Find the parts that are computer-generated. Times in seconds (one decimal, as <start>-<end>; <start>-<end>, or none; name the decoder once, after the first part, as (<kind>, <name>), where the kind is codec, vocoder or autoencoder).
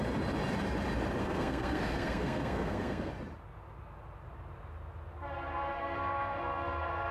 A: 1.2-3.1 (codec, SNAC); 5.7-7.1